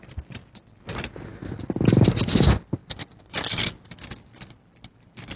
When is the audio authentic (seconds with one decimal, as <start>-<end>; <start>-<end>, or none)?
0.0-5.4